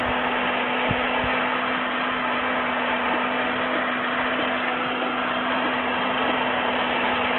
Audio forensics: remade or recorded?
recorded